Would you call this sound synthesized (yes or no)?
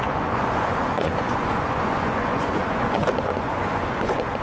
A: yes